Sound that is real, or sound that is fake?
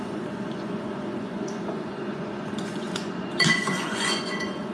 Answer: fake